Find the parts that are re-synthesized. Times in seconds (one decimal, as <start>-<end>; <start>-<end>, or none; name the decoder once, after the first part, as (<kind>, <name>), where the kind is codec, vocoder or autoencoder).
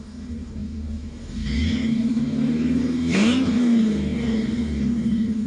0.0-5.5 (codec, DAC)